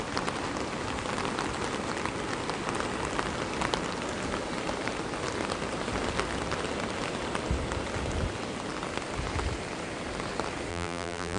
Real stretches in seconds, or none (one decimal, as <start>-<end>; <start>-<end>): 0.0-10.7